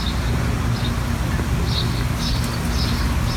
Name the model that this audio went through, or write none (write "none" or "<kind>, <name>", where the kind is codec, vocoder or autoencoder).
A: none